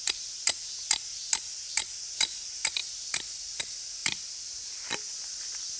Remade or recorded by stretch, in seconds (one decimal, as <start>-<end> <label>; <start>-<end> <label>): 0.0-5.8 recorded